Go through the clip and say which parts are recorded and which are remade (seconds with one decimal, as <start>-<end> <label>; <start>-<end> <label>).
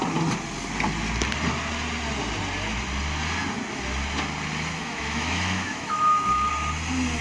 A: 0.0-4.8 recorded; 4.8-6.5 remade; 6.5-7.2 recorded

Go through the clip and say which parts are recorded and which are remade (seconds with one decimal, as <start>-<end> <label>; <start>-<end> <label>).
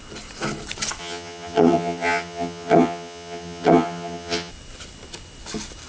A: 0.0-1.0 recorded; 1.0-4.5 remade; 4.5-5.9 recorded